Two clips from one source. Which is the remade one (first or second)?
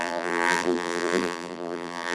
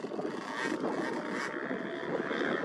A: first